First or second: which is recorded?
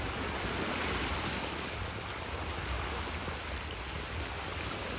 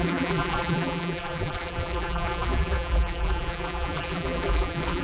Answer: first